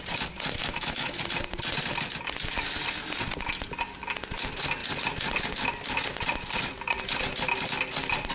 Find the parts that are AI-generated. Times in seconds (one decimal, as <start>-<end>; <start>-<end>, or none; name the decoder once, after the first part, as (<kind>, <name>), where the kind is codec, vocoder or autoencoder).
0.6-1.2 (autoencoder, DAC-VAE)